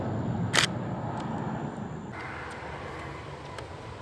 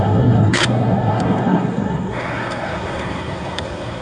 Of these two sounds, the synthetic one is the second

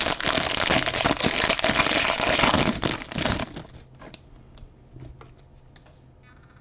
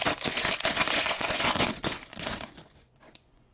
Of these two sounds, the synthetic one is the second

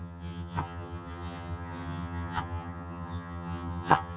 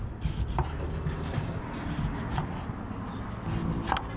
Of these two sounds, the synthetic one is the first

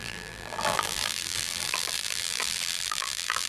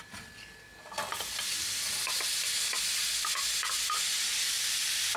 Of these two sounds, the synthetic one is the first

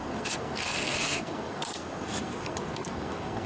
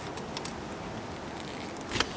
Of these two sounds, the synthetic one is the first